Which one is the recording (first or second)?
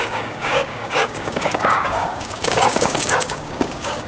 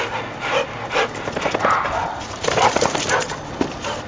second